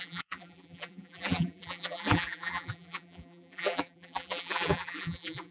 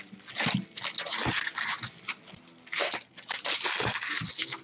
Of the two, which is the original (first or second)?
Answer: second